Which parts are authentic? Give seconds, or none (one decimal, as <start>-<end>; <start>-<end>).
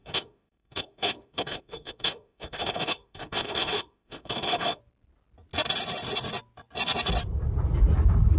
4.8-8.4